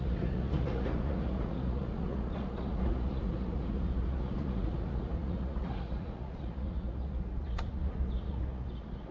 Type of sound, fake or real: fake